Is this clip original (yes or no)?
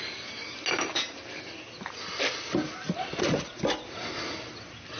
yes